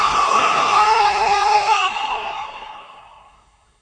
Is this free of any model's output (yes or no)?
no